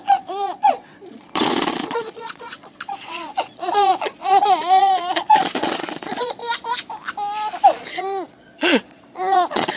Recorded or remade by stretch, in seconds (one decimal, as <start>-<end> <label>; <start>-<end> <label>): 0.0-6.4 remade; 6.4-7.9 recorded; 7.9-9.8 remade